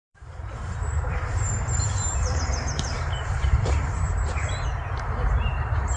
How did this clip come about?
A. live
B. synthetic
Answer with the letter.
B